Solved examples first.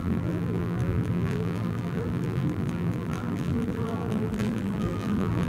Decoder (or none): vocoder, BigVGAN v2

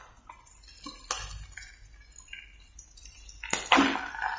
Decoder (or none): none